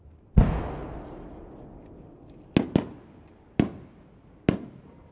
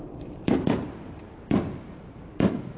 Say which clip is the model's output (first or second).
second